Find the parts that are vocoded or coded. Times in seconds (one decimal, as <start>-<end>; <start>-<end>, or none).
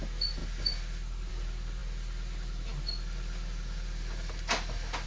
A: none